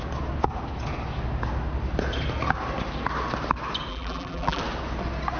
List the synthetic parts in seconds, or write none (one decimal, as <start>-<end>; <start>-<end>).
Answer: 3.9-4.6